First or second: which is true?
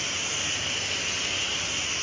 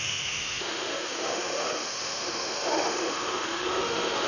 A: first